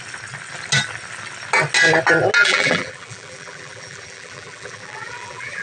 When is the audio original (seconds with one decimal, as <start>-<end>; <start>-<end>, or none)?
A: 0.0-2.4